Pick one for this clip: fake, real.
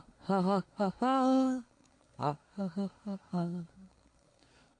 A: fake